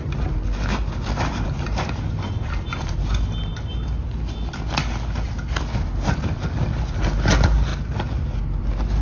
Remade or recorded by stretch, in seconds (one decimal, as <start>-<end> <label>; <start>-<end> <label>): 0.0-9.0 recorded